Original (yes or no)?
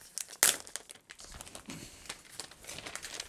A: yes